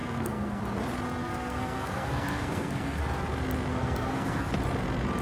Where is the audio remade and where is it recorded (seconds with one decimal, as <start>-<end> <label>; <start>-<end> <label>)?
0.0-0.6 remade; 0.6-1.2 recorded; 1.2-3.0 remade; 3.0-3.7 recorded; 3.7-4.5 remade; 4.5-5.2 recorded